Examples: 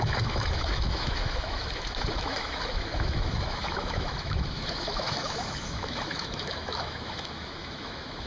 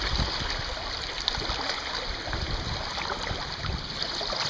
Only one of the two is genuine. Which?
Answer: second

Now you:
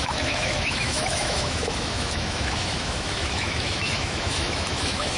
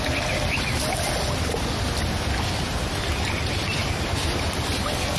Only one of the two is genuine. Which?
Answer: second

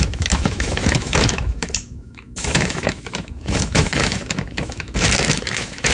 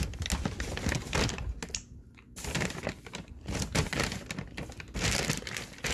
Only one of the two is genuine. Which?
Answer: second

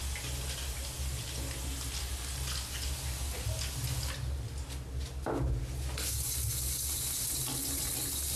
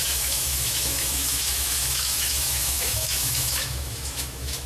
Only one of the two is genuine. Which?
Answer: first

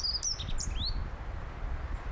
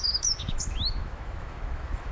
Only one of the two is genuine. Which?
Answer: first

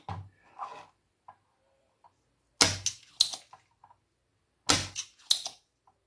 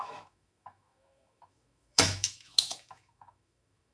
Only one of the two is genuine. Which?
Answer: first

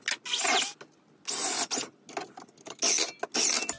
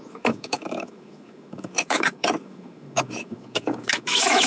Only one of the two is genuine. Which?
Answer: first